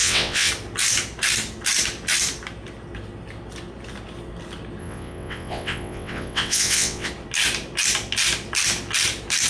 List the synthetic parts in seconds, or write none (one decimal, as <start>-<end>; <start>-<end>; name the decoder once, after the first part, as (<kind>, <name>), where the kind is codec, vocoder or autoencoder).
0.0-0.5 (vocoder, WaveNeXt); 4.8-7.1